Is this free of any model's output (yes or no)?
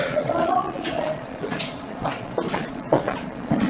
no